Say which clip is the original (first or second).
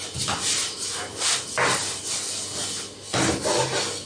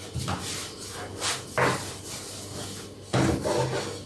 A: second